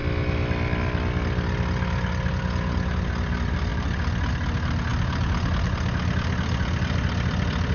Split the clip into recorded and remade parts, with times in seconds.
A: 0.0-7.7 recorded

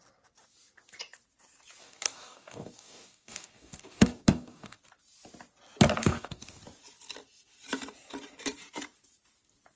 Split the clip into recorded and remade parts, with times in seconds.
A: 0.0-1.8 recorded; 1.8-4.8 remade; 4.8-6.0 recorded; 6.0-6.6 remade; 6.6-9.8 recorded

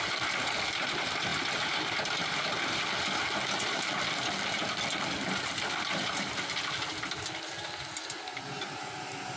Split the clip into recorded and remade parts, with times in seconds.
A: 0.0-9.4 recorded